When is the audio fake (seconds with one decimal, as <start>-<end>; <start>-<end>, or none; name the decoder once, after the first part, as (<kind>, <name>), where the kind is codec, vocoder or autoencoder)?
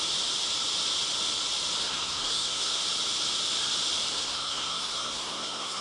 1.8-2.8 (codec, SNAC); 4.1-5.8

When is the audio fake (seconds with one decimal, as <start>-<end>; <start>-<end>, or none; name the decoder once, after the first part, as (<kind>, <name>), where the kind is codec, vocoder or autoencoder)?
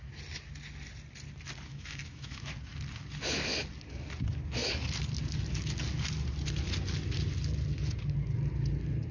1.7-2.5 (autoencoder, DAC-VAE)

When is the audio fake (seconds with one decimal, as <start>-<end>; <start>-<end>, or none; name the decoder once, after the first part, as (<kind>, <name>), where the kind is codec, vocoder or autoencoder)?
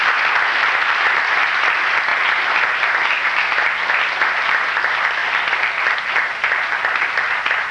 none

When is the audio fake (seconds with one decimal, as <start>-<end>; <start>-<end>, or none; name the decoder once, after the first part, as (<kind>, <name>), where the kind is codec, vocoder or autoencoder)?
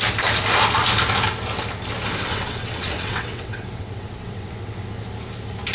2.3-4.9 (vocoder, WaveNeXt)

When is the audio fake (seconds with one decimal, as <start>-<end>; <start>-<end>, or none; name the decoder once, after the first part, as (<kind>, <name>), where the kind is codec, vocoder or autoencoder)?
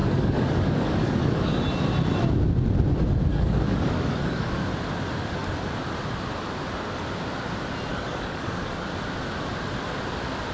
0.0-1.6 (codec, DAC); 3.3-4.6; 7.9-8.9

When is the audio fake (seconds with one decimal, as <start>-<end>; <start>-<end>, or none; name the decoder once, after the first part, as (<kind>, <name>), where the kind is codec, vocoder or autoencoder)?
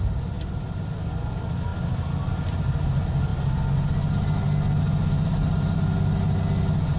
none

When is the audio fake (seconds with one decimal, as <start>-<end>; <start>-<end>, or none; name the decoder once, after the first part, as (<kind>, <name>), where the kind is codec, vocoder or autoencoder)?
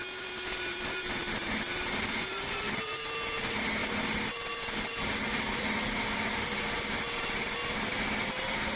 none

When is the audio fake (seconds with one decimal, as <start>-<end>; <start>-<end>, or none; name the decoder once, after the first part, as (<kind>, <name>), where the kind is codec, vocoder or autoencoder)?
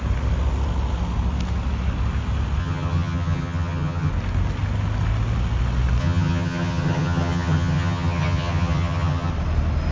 2.6-4.1 (vocoder, HiFi-GAN); 6.0-9.3